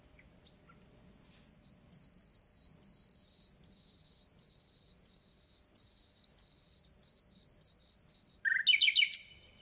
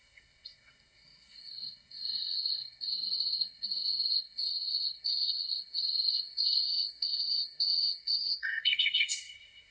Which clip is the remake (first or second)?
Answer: second